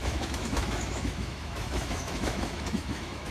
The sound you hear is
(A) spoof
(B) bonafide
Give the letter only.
A